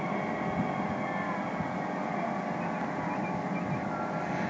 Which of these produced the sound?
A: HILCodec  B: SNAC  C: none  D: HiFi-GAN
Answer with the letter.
C